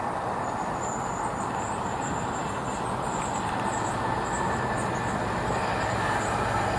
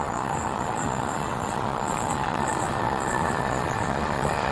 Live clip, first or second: first